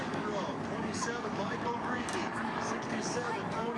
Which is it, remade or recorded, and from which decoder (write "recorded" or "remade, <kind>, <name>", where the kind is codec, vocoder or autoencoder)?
remade, codec, DAC